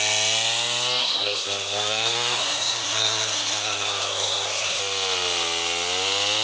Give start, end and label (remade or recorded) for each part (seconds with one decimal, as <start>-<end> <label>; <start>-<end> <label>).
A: 0.0-1.0 recorded; 1.0-4.8 remade; 4.8-6.4 recorded